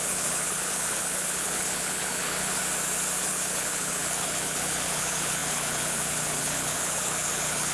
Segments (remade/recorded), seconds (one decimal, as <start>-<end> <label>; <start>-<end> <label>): 0.0-2.6 remade; 2.6-3.2 recorded; 3.2-7.7 remade